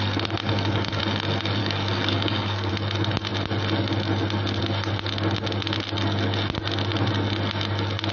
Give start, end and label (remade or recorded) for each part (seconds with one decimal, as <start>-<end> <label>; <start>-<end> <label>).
0.0-0.4 recorded; 0.4-1.0 remade; 1.0-1.6 recorded; 1.6-2.7 remade; 2.7-8.1 recorded